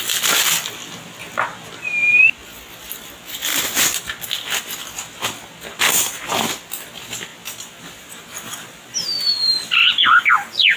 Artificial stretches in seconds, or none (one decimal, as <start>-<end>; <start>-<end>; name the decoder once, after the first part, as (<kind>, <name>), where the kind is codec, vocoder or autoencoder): none